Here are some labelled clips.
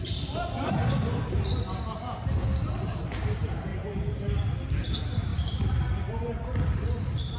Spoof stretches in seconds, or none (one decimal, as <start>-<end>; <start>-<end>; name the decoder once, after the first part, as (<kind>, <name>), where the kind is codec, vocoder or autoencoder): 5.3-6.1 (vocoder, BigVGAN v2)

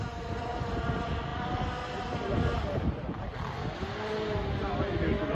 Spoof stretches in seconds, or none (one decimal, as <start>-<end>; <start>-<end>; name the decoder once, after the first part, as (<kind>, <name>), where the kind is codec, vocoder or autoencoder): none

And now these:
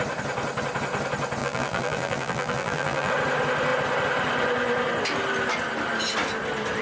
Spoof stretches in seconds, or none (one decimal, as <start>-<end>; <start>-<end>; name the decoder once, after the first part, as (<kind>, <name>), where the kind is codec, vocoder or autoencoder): 1.4-3.1 (vocoder, BigVGAN v2)

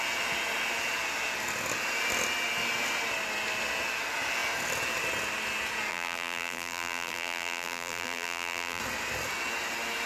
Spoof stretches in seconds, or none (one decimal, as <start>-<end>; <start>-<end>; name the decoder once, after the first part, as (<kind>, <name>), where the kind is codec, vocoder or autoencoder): 5.9-8.8 (vocoder, BigVGAN v2)